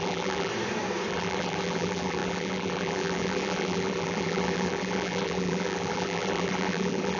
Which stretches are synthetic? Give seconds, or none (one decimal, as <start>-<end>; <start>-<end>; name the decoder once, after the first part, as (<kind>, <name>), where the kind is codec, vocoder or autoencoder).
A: 0.0-0.5 (vocoder, BigVGAN v2); 1.1-7.2